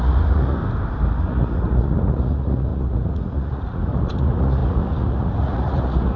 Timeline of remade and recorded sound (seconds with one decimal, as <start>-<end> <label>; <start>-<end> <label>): 0.0-0.6 remade; 0.6-1.2 recorded; 1.2-6.2 remade